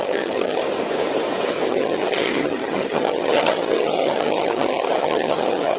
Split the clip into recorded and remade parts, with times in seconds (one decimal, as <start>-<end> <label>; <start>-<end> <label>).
0.0-0.6 remade; 0.6-1.7 recorded; 1.7-5.8 remade